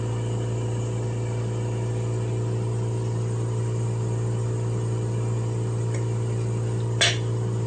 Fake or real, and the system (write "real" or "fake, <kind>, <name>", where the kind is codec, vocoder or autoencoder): real